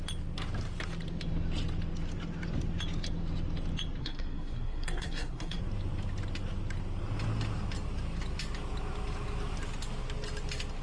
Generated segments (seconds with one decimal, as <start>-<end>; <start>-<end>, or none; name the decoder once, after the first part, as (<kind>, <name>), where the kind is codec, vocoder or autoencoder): 4.0-5.6 (codec, SNAC)